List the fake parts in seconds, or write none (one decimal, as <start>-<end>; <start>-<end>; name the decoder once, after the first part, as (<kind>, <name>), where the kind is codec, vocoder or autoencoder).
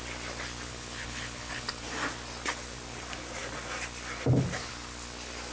0.7-1.8 (codec, HILCodec)